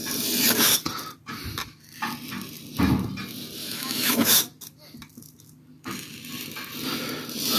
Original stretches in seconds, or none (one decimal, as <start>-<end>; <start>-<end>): 0.0-3.6; 4.4-7.6